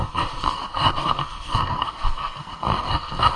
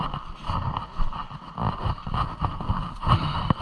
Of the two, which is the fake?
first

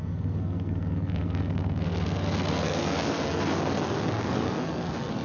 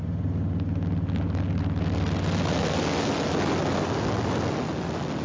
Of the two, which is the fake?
first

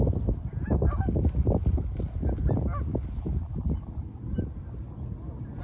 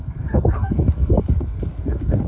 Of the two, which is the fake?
second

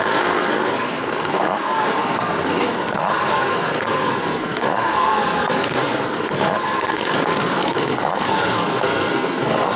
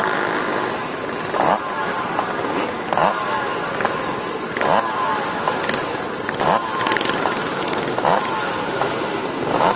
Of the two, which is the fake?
first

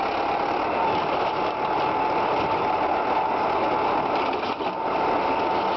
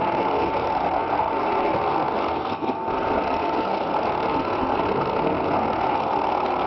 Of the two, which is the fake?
second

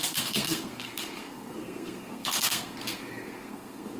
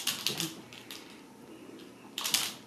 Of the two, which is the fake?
first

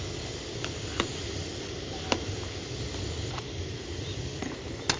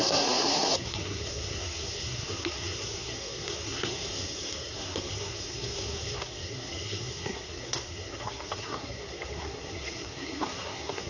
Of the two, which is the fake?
second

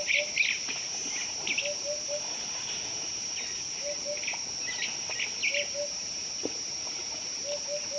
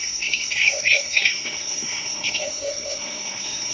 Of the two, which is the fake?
second